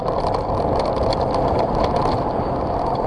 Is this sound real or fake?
real